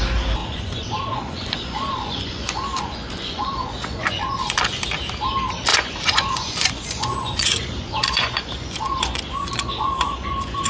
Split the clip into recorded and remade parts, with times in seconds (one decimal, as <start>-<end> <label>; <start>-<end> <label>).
0.0-0.4 recorded; 0.4-4.7 remade; 4.7-5.7 recorded; 5.7-10.7 remade